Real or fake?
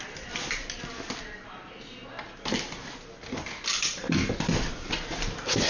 real